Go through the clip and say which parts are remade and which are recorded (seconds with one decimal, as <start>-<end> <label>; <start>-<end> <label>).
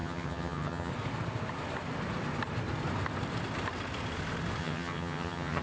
0.0-0.9 remade; 0.9-4.6 recorded; 4.6-5.6 remade